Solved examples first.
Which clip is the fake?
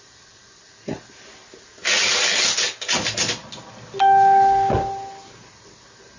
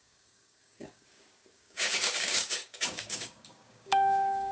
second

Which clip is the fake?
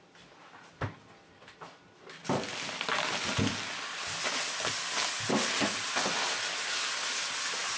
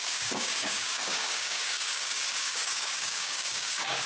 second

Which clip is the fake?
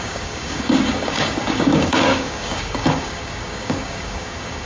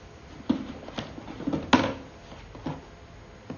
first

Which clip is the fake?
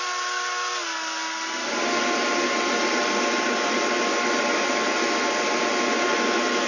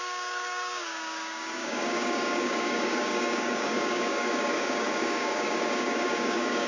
second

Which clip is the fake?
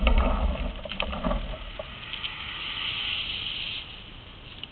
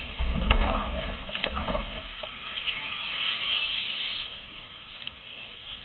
second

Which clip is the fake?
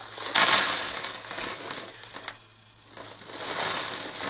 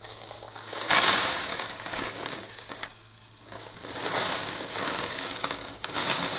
second